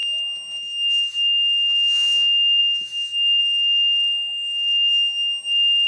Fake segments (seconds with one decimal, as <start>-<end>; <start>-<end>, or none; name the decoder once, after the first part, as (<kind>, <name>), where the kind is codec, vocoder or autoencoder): 0.9-4.9 (autoencoder, DAC-VAE); 5.5-5.9